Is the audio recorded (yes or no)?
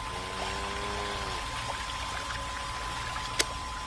yes